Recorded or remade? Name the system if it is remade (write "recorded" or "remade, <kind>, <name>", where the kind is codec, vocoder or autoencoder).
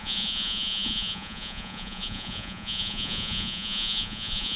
remade, vocoder, Vocos